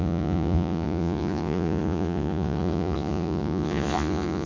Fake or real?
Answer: fake